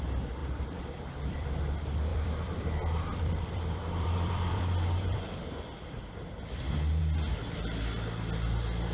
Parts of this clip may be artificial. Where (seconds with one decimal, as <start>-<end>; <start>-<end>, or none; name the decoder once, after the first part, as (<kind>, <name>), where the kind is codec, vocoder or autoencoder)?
0.4-1.5 (vocoder, BigVGAN v2); 2.1-7.0